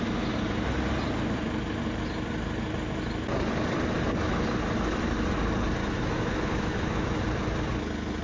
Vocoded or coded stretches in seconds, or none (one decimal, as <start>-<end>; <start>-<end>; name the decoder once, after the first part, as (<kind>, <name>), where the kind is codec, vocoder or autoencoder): 5.8-7.2 (autoencoder, DAC-VAE)